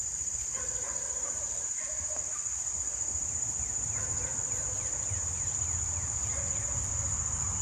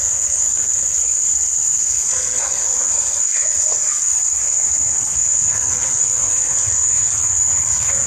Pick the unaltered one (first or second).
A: first